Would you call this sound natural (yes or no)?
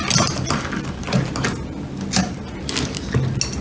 yes